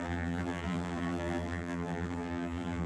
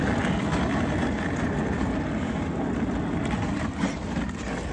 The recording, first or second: second